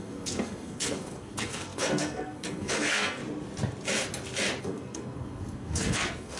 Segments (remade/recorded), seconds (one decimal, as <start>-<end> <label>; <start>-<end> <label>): 0.0-3.2 remade; 3.2-4.6 recorded; 4.6-6.4 remade